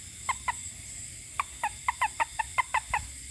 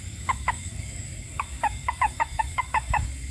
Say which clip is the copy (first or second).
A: second